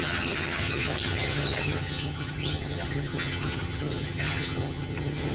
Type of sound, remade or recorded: remade